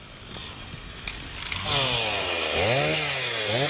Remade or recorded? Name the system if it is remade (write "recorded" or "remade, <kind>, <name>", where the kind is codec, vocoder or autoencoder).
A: recorded